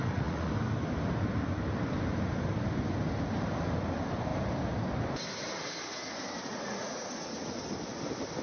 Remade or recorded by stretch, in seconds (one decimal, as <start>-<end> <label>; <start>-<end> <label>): 0.0-0.5 remade; 0.5-6.5 recorded; 6.5-7.6 remade; 7.6-8.4 recorded